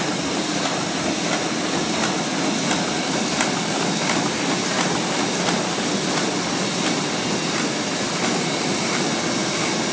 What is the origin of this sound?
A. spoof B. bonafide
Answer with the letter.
B